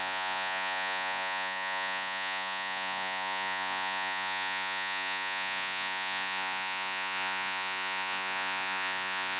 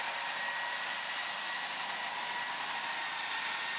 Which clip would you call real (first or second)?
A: second